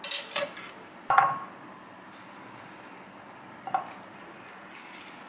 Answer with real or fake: real